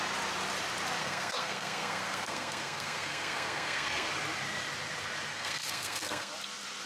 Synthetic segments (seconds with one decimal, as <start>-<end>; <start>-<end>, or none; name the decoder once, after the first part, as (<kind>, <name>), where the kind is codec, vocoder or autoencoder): 1.0-4.1 (codec, SNAC); 5.3-6.3